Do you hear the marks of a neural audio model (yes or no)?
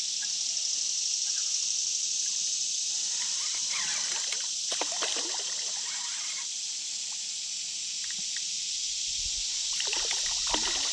no